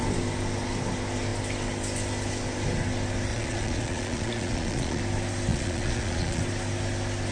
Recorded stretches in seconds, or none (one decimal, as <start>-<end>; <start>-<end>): 0.0-3.3; 5.0-5.5; 6.4-7.3